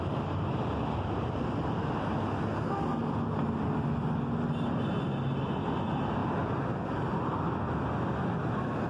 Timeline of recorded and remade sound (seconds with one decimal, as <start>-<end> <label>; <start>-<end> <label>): 0.0-8.9 recorded